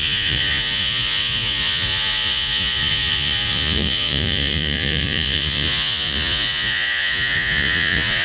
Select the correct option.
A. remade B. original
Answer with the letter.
A